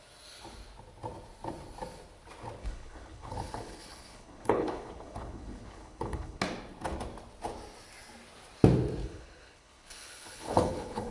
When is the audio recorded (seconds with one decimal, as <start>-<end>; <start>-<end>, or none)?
0.0-2.6; 6.4-9.0